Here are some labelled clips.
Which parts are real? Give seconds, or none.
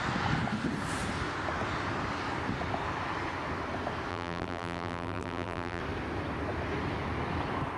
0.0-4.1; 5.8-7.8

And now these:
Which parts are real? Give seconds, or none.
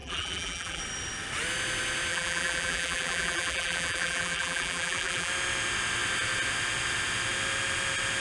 0.8-2.1; 5.3-8.2